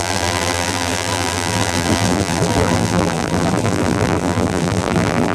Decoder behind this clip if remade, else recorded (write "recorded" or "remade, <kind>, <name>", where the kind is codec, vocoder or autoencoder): remade, vocoder, BigVGAN v2